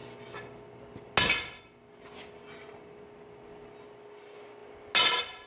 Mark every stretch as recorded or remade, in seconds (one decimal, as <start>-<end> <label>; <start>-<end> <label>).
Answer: 0.0-5.5 recorded